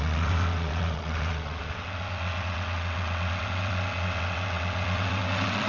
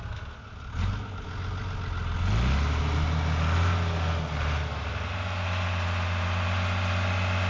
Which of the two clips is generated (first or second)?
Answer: first